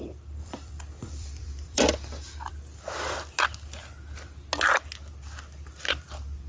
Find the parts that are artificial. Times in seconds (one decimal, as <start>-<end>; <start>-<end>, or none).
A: 0.4-2.5